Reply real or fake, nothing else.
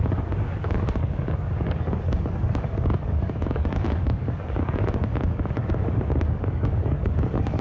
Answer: fake